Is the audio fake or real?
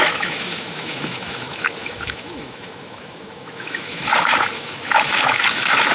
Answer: fake